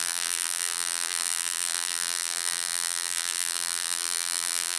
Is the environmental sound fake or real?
fake